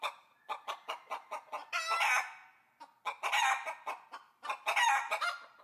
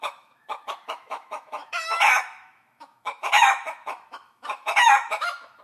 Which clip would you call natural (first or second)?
first